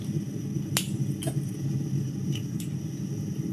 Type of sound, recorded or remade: recorded